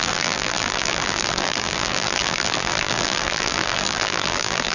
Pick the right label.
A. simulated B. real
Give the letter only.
A